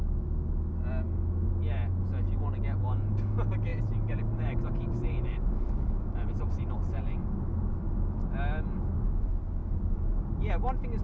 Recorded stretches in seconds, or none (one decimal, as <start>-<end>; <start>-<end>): 0.0-3.7; 7.0-11.0